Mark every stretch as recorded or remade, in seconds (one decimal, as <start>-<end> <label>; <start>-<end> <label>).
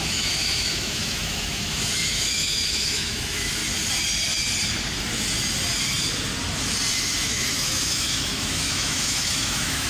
0.0-3.6 remade; 3.6-7.2 recorded; 7.2-9.9 remade